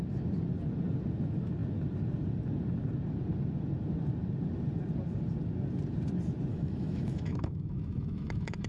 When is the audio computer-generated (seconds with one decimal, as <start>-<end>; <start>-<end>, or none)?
6.5-8.7

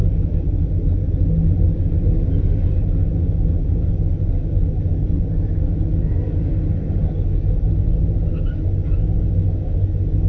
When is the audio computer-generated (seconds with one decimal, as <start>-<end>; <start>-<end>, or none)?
none

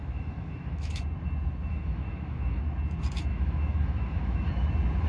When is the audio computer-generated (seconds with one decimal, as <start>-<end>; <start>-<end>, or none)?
0.0-1.0; 1.7-2.6; 3.3-4.5

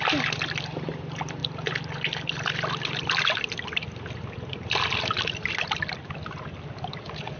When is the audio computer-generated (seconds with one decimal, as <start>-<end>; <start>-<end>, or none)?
none

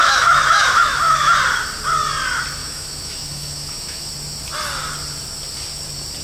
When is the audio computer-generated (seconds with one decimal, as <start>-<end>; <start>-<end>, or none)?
0.0-1.4; 2.6-4.1